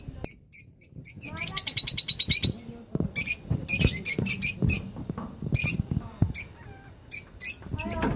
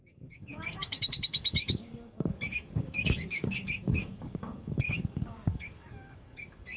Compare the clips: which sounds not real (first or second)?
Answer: second